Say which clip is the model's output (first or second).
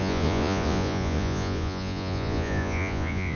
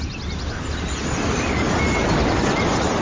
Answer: first